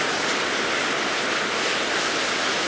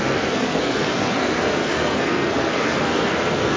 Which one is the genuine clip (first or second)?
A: first